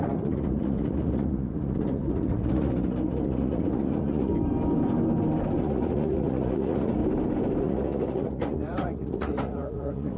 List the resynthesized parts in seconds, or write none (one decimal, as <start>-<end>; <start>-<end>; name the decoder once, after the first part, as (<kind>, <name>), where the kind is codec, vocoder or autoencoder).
0.0-4.3 (vocoder, Vocos); 5.6-7.0; 7.6-10.2